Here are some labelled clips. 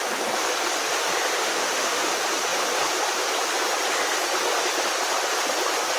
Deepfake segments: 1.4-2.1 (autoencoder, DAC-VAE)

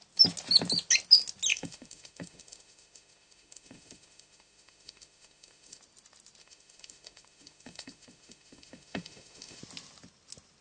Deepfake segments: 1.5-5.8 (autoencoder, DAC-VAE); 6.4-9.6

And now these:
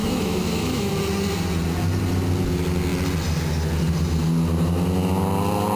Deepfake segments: 0.0-0.9 (autoencoder, DAC-VAE)

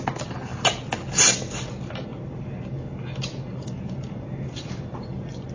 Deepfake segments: none

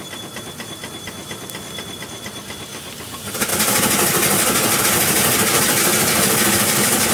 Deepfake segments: none

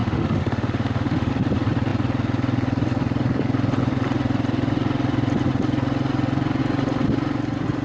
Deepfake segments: 0.0-1.3 (autoencoder, DAC-VAE)

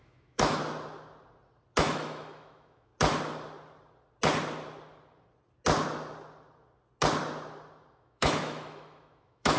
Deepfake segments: 0.0-0.6 (autoencoder, DAC-VAE); 1.8-2.9; 7.9-9.6